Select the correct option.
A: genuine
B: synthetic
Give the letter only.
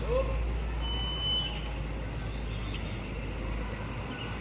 A